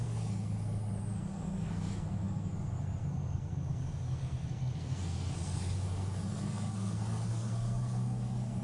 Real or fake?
fake